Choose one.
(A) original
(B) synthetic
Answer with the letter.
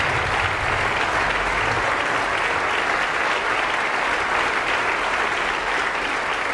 A